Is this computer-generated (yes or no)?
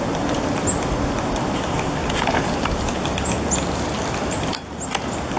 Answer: no